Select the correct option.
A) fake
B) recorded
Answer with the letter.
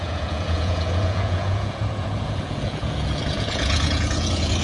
A